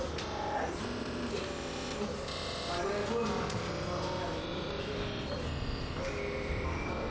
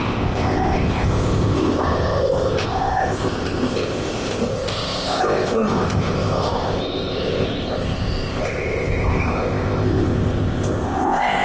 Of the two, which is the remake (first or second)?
second